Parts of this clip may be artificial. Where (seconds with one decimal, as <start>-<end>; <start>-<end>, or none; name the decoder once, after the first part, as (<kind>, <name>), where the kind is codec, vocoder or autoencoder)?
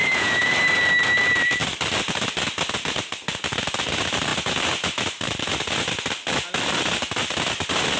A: 0.0-0.5 (vocoder, Vocos)